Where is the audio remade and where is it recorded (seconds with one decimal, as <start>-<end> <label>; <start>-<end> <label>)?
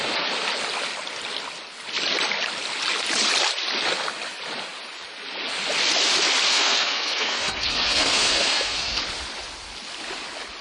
0.0-6.5 recorded; 6.5-9.0 remade; 9.0-10.6 recorded